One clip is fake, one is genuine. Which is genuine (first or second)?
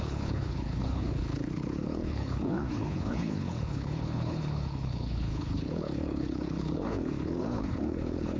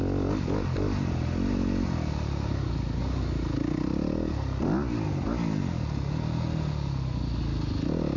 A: second